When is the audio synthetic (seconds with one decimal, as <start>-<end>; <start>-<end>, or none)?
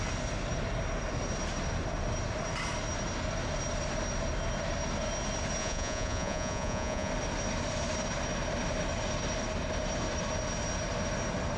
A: 5.6-7.1